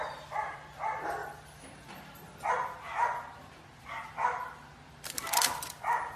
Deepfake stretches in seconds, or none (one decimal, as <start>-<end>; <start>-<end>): 0.0-1.2; 4.9-6.2